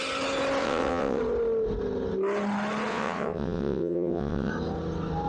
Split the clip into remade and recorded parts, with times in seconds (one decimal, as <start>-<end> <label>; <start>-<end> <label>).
0.0-0.6 recorded; 0.6-1.2 remade; 1.2-2.9 recorded; 2.9-4.5 remade; 4.5-5.3 recorded